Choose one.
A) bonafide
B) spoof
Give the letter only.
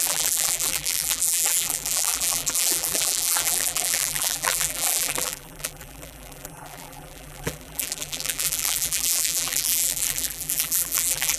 B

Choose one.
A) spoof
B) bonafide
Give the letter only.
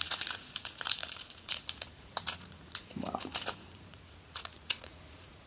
A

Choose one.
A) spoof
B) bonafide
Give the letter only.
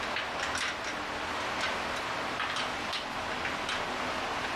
B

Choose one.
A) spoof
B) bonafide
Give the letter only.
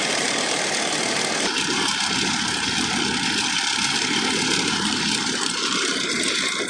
A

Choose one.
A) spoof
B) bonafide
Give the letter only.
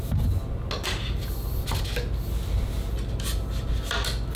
B